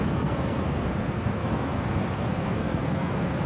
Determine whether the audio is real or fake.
fake